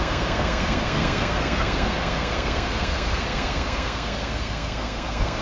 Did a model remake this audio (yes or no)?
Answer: yes